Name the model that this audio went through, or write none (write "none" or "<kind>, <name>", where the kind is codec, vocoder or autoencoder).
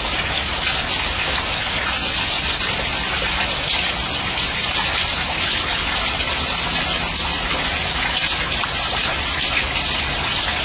none